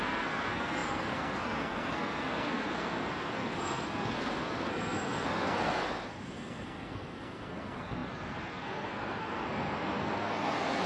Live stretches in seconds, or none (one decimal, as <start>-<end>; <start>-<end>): none